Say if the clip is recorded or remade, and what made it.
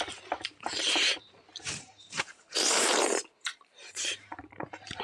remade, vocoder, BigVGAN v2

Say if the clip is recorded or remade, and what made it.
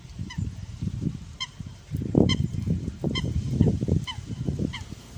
remade, vocoder, BigVGAN v2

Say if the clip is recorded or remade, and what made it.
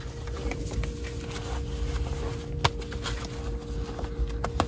recorded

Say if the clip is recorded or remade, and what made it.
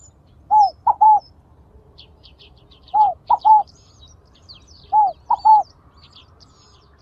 remade, vocoder, BigVGAN v2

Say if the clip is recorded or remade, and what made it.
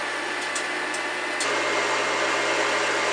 recorded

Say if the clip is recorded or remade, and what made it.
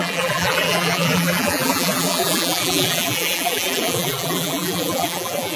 remade, vocoder, BigVGAN v2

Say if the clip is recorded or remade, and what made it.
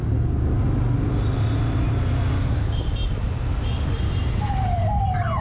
recorded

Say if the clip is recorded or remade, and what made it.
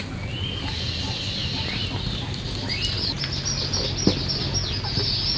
recorded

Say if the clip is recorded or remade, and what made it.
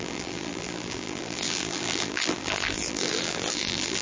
remade, vocoder, BigVGAN v2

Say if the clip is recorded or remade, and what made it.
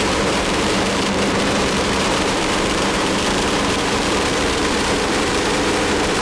remade, vocoder, BigVGAN v2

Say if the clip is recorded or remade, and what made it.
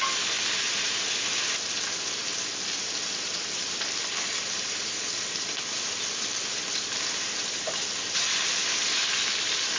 remade, vocoder, BigVGAN v2